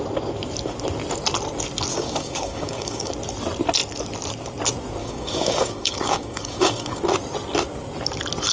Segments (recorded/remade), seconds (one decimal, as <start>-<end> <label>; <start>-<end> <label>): 0.0-1.9 recorded; 1.9-3.1 remade; 3.1-5.0 recorded; 5.0-7.0 remade; 7.0-8.5 recorded